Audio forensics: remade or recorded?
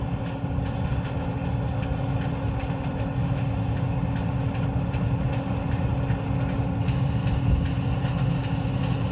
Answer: recorded